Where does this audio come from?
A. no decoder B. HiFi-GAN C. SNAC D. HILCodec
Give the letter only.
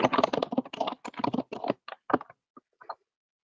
A